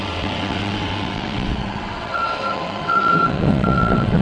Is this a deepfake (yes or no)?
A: yes